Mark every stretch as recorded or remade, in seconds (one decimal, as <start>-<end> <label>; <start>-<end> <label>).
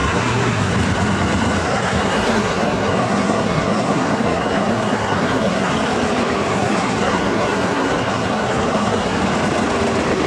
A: 0.0-0.7 remade; 0.7-1.6 recorded; 1.6-5.7 remade; 5.7-6.5 recorded; 6.5-9.2 remade; 9.2-10.3 recorded